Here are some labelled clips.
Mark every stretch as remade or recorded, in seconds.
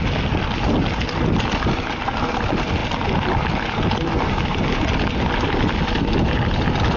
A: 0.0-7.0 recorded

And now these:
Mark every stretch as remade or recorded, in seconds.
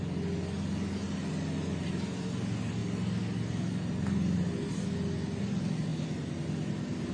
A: 0.0-7.1 recorded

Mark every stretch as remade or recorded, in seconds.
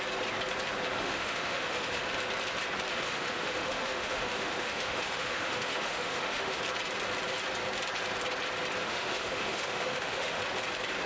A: 0.0-1.0 recorded; 1.0-2.0 remade; 2.0-2.9 recorded; 2.9-6.6 remade; 6.6-8.8 recorded; 8.8-10.4 remade; 10.4-11.1 recorded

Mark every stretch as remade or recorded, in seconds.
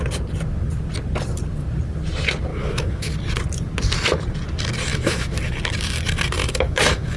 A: 0.0-2.5 recorded; 2.5-3.1 remade; 3.1-4.9 recorded; 4.9-5.4 remade; 5.4-6.4 recorded; 6.4-7.2 remade